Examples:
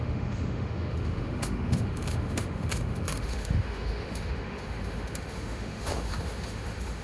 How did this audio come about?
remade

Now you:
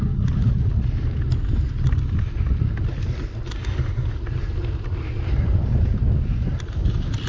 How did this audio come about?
recorded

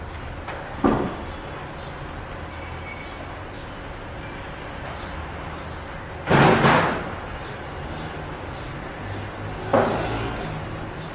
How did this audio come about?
recorded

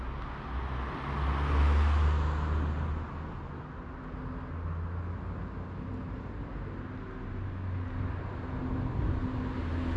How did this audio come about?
recorded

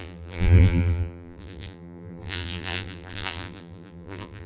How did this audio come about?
remade